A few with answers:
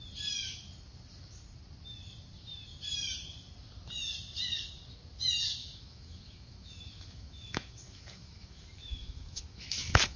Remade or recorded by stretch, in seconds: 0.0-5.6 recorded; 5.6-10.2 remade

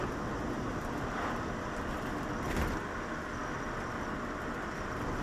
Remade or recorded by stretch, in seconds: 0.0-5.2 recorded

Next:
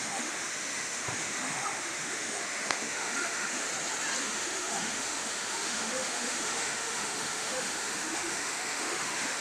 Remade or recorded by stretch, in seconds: 0.0-3.7 remade; 3.7-4.2 recorded; 4.2-9.4 remade

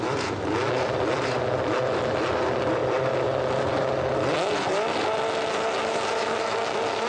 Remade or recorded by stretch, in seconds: 0.0-7.1 recorded

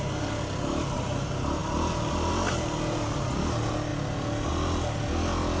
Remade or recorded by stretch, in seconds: 0.0-5.6 recorded